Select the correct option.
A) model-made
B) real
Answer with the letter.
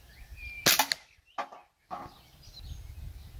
B